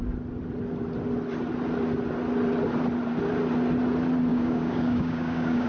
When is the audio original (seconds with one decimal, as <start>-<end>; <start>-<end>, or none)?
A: 0.0-4.3